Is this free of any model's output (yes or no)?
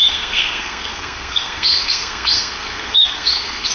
no